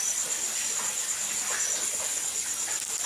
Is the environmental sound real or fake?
real